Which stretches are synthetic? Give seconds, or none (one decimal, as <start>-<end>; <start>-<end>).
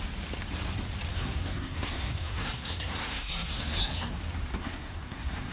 1.1-4.1; 4.5-5.5